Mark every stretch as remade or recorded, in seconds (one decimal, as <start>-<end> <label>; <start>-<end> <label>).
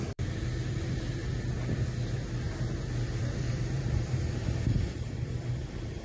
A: 0.0-1.2 remade; 1.2-2.1 recorded; 2.1-6.0 remade